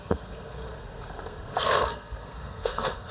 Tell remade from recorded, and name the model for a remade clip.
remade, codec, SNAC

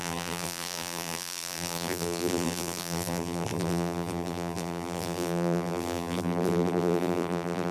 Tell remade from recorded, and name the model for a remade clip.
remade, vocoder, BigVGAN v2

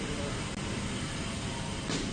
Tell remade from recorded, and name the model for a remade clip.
recorded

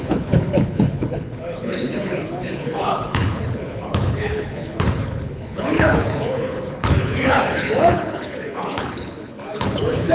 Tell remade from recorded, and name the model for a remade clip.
remade, codec, HILCodec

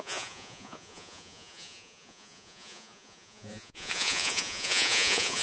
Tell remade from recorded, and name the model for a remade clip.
remade, vocoder, Vocos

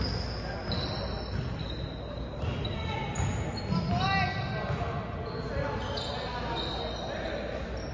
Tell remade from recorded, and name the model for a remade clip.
recorded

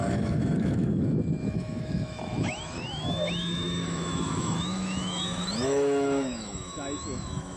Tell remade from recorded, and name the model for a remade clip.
remade, autoencoder, DAC-VAE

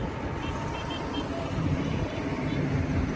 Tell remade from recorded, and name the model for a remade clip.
remade, vocoder, BigVGAN v2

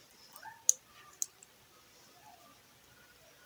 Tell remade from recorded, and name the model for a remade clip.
recorded